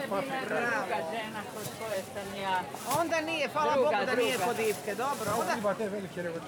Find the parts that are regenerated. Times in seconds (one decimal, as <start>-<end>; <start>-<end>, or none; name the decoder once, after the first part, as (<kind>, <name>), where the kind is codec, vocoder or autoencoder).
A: 0.0-1.1 (vocoder, BigVGAN v2); 1.7-2.4; 3.9-6.5